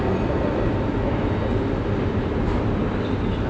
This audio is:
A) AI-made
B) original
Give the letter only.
B